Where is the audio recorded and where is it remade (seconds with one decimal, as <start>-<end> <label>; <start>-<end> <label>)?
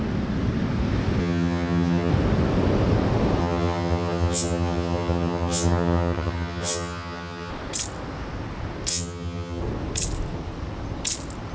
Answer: 0.0-1.2 recorded; 1.2-2.1 remade; 2.1-3.4 recorded; 3.4-7.5 remade; 7.5-8.9 recorded; 8.9-9.6 remade; 9.6-11.5 recorded